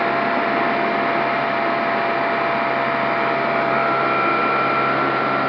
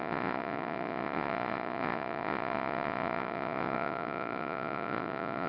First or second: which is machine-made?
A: second